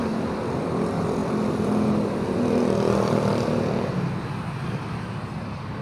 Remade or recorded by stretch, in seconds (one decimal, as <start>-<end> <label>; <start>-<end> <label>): 0.0-0.7 remade; 0.7-5.8 recorded